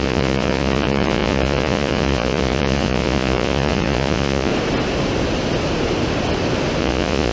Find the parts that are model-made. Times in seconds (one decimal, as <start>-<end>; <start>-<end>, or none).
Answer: 0.0-4.5; 6.8-7.3